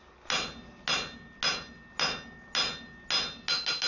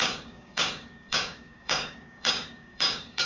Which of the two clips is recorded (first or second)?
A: first